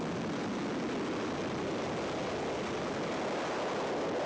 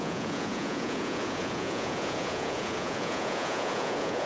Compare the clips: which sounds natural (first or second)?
first